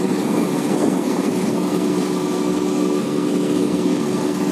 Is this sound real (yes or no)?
no